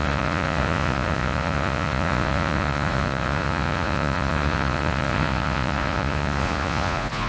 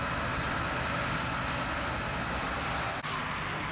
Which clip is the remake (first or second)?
first